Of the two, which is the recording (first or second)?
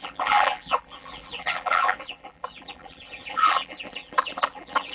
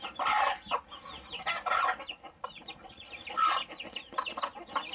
second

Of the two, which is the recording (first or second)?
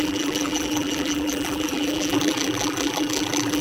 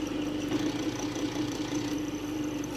second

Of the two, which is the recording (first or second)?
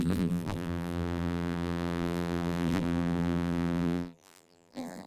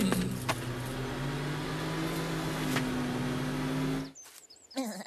second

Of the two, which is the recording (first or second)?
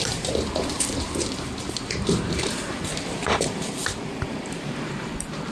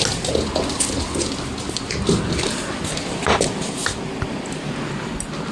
second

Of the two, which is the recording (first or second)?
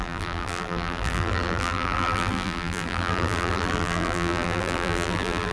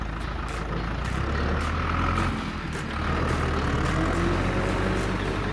second